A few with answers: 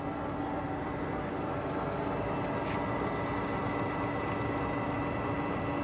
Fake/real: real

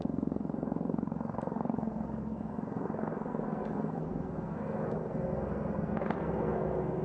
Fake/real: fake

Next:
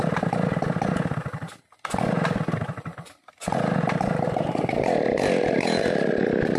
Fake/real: real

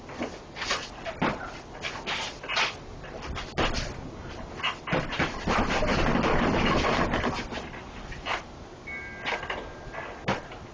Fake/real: real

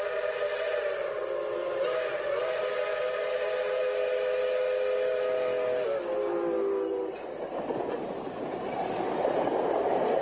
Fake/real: real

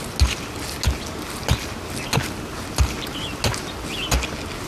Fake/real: real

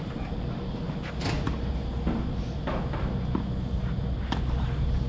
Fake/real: real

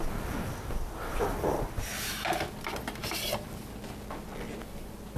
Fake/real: real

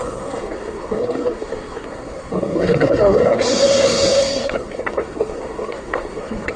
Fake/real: fake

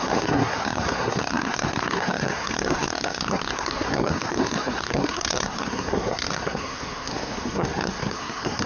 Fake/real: fake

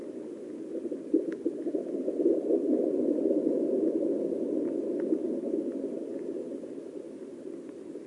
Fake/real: real